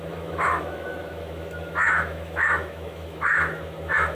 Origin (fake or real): fake